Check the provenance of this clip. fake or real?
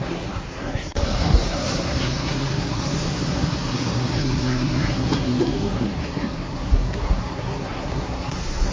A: fake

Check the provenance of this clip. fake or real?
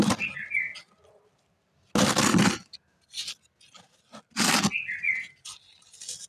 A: real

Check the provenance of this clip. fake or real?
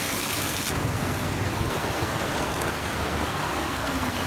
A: fake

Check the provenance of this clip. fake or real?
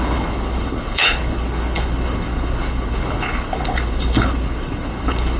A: fake